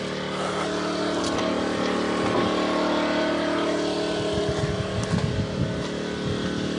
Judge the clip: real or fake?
real